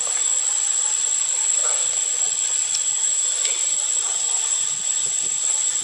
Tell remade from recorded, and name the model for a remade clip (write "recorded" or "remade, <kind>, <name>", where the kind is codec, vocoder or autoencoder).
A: recorded